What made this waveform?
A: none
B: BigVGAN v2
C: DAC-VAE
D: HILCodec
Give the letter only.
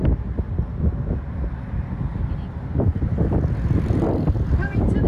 B